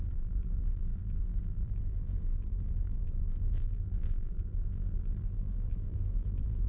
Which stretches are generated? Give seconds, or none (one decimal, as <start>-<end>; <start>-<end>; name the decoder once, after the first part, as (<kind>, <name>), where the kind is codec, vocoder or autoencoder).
0.0-6.7 (vocoder, BigVGAN v2)